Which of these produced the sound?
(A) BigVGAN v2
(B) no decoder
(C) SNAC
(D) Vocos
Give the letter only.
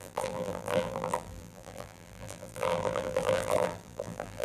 A